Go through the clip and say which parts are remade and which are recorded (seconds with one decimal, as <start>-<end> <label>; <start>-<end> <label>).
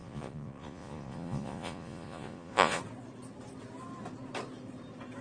0.0-2.8 remade; 2.8-5.2 recorded